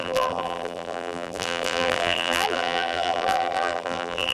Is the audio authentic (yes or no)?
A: no